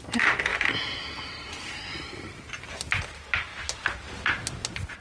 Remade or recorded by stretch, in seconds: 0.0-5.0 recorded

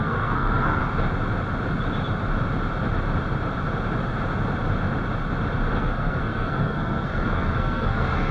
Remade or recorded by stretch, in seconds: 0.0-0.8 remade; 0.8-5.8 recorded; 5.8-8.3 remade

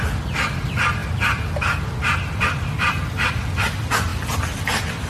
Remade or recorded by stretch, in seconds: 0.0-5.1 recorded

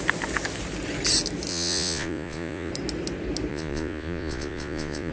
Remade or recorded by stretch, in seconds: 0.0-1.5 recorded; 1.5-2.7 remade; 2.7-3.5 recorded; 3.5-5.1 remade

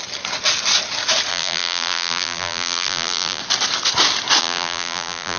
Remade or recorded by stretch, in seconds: 0.0-1.3 recorded; 1.3-3.4 remade; 3.4-4.4 recorded; 4.4-5.4 remade

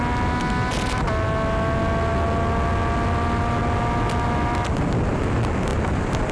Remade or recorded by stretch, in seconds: 0.0-6.3 recorded

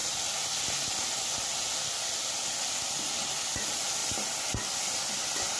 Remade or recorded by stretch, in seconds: 0.0-5.6 recorded

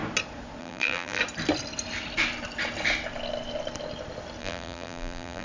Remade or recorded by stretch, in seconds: 0.0-0.6 recorded; 0.6-1.2 remade; 1.2-4.4 recorded; 4.4-5.4 remade